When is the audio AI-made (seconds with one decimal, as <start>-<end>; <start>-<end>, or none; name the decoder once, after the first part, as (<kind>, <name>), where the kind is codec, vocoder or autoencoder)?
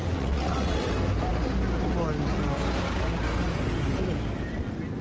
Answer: 0.0-0.9 (vocoder, WaveNeXt)